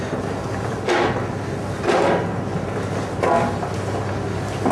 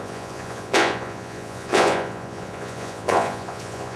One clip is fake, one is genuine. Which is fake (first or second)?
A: second